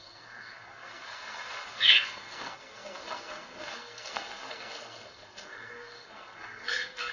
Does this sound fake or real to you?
fake